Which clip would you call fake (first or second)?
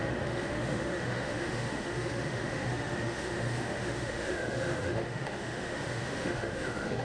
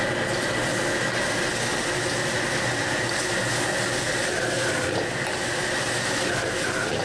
first